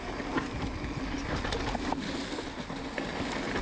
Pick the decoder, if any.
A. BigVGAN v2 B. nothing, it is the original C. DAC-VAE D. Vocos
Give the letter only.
B